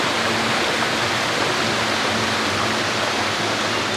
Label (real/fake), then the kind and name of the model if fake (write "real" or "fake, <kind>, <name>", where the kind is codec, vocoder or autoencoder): real